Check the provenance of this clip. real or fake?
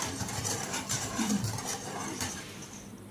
fake